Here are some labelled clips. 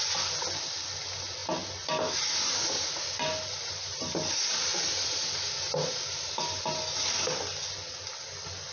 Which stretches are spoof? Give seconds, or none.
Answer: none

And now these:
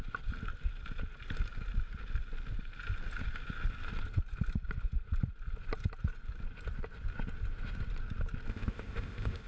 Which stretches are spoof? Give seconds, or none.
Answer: 8.5-9.5 (codec, ZipCodec)

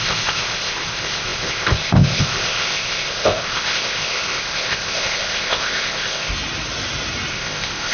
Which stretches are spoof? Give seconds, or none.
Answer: 0.0-6.3 (codec, ZipCodec); 7.3-7.9